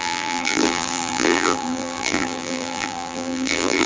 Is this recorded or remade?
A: remade